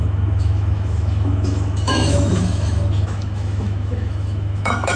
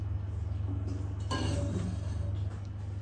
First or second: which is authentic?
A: second